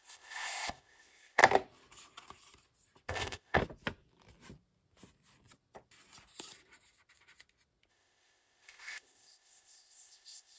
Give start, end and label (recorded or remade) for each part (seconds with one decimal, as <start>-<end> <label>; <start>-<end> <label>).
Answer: 0.0-1.4 remade; 1.4-3.1 recorded; 3.1-3.6 remade; 3.6-7.9 recorded; 7.9-10.6 remade